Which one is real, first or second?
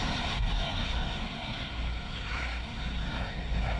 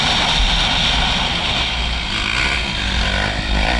second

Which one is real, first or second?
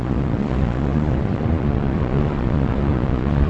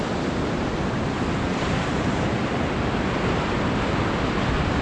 second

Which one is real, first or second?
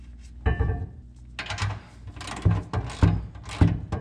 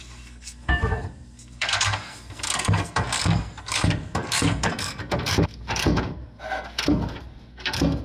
first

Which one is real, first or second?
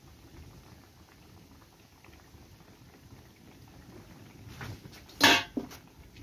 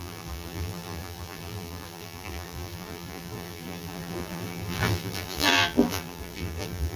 first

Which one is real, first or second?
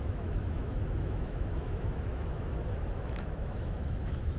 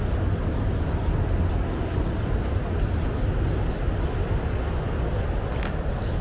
second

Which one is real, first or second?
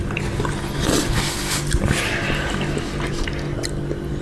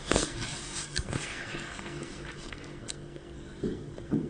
first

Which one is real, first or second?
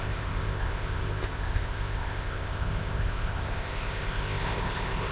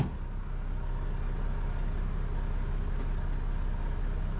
second